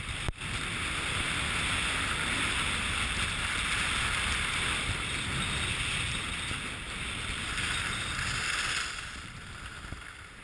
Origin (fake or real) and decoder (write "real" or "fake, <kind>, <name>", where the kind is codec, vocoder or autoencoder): real